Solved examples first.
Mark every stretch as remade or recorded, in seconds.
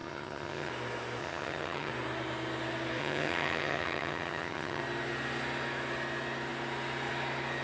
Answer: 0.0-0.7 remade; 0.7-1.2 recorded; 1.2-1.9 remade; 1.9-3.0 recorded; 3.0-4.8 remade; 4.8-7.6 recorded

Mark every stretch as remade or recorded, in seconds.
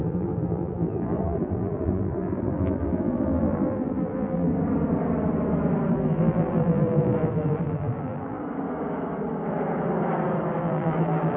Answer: 0.0-4.5 remade; 4.5-5.9 recorded; 5.9-8.4 remade; 8.4-10.6 recorded; 10.6-11.4 remade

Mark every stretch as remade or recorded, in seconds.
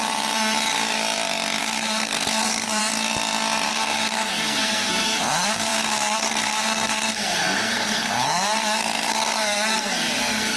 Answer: 0.0-1.6 recorded; 1.6-2.8 remade; 2.8-3.7 recorded; 3.7-10.6 remade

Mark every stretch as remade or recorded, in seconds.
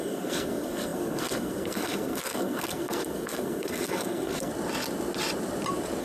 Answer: 0.0-4.5 remade; 4.5-6.0 recorded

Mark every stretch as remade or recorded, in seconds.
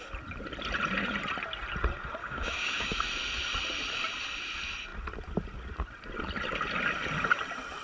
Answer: 0.0-2.2 recorded; 2.2-3.0 remade; 3.0-7.8 recorded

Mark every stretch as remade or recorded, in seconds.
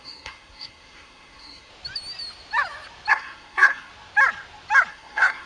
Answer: 0.0-1.7 remade; 1.7-3.1 recorded; 3.1-3.9 remade; 3.9-4.9 recorded; 4.9-5.5 remade